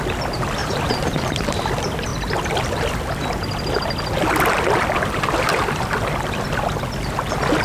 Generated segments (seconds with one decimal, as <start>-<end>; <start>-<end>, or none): 0.6-1.2